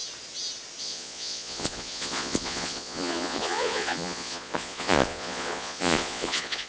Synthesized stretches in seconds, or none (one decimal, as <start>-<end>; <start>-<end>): 0.8-6.7